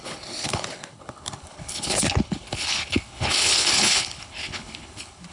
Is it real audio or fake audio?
fake